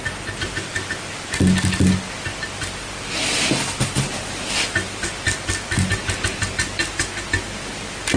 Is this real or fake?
real